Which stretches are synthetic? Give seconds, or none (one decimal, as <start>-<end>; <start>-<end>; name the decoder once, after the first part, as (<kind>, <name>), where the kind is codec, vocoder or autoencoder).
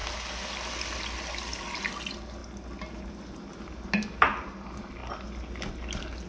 none